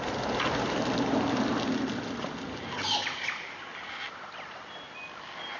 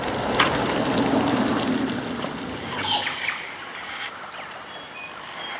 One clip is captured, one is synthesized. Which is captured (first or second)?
first